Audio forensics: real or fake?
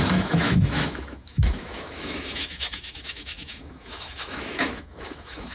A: fake